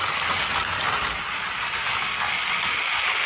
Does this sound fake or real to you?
real